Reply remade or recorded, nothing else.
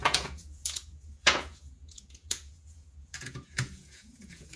remade